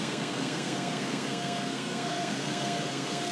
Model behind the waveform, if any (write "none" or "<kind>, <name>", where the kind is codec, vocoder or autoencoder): codec, SNAC